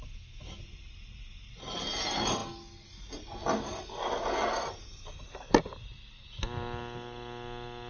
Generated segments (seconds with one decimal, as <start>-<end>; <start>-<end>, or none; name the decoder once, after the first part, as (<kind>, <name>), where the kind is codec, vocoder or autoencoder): 0.0-0.6 (autoencoder, DAC-VAE)

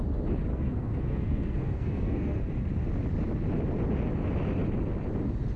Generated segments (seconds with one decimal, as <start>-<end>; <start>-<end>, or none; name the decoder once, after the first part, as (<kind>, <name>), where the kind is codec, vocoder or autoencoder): 0.5-2.5 (codec, SNAC)

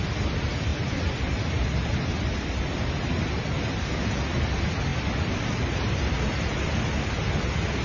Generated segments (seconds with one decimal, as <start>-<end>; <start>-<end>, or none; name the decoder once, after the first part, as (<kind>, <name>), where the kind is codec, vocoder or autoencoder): none

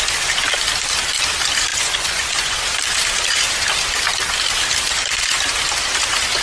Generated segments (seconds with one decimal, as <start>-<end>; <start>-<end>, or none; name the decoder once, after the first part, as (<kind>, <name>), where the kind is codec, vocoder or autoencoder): 1.7-2.6 (vocoder, Vocos)

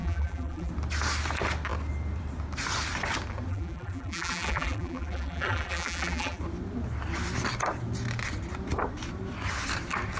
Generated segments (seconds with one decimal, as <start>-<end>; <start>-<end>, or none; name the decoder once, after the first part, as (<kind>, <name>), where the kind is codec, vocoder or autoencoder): 0.0-0.7 (vocoder, BigVGAN v2); 3.5-6.4

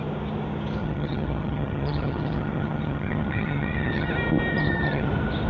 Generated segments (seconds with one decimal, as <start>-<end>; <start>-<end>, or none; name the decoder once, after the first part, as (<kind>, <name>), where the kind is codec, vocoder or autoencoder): 0.8-4.1 (vocoder, HiFi-GAN); 4.5-5.1

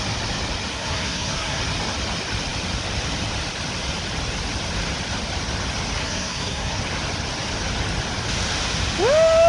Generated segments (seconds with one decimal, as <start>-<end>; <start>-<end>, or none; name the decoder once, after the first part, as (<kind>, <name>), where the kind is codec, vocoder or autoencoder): 0.7-1.6 (codec, SNAC); 6.0-6.8

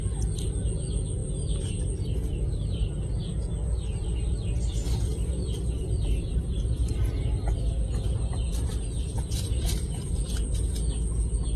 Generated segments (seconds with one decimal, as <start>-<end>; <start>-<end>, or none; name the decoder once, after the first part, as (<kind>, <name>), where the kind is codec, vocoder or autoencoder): 1.2-1.7 (vocoder, BigVGAN v2); 5.1-6.6; 9.1-9.6